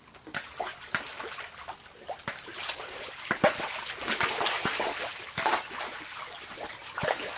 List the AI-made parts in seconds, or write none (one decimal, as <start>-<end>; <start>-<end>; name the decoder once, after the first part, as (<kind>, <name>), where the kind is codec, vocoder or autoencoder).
none